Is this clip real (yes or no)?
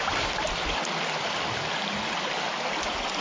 yes